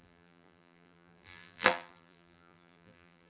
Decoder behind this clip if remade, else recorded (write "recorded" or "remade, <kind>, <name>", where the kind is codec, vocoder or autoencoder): remade, vocoder, BigVGAN v2